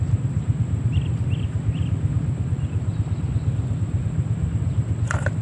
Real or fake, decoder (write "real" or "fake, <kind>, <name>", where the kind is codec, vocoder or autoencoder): real